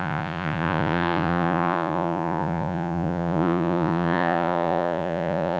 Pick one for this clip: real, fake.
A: fake